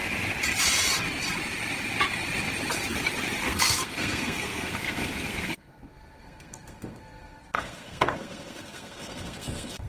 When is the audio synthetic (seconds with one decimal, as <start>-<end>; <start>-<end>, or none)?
3.4-9.9